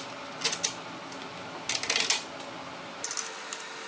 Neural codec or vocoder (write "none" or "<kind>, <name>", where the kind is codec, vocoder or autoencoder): none